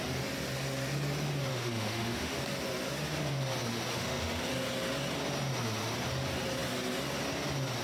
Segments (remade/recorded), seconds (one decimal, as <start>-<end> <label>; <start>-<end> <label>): 0.0-1.5 recorded; 1.5-2.4 remade; 2.4-3.9 recorded; 3.9-4.4 remade; 4.4-7.8 recorded